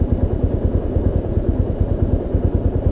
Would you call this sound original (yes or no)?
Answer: yes